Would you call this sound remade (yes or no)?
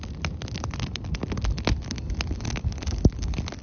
no